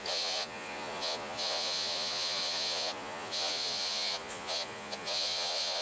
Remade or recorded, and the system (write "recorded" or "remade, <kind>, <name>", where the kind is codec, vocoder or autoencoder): remade, vocoder, Vocos